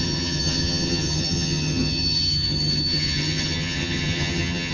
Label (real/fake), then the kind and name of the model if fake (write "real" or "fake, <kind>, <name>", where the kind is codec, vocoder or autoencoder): fake, vocoder, HiFi-GAN